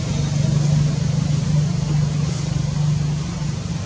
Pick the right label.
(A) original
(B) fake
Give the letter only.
A